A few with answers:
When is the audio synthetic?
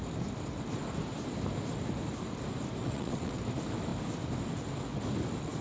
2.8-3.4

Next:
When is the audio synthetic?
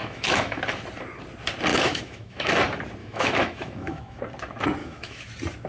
0.0-0.6; 1.7-2.5; 3.0-4.2; 4.8-5.3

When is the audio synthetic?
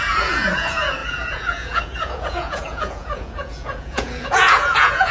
0.0-5.1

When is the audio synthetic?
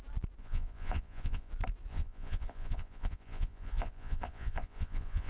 0.4-1.5; 1.9-5.3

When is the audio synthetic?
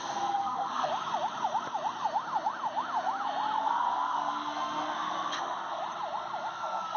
0.0-0.9; 3.6-5.8; 6.5-7.0